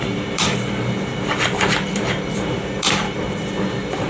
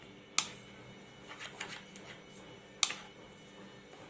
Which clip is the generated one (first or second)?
first